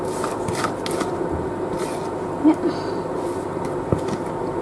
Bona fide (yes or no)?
yes